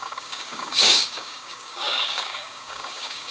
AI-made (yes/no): yes